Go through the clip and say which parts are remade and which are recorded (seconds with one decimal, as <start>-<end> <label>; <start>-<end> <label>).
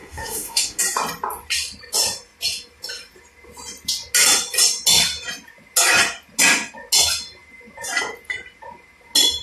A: 0.0-0.8 remade; 0.8-9.4 recorded